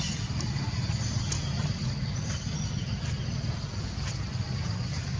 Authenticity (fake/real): real